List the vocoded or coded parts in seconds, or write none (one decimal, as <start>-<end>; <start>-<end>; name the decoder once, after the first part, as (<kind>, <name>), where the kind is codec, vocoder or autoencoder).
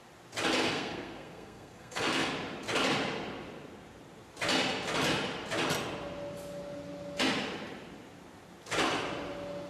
0.6-2.3 (codec, SNAC)